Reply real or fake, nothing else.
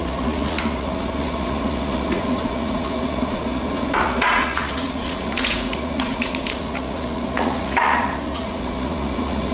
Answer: fake